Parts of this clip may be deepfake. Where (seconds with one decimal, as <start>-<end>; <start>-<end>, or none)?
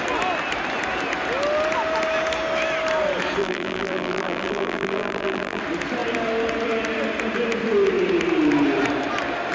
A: 3.4-5.6